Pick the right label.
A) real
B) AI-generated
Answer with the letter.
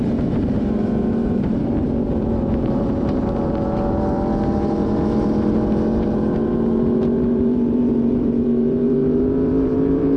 B